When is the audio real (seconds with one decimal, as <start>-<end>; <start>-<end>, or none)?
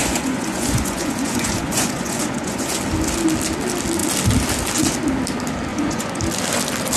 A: 2.8-5.7; 6.2-7.0